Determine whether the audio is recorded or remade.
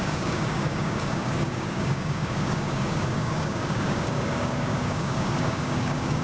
remade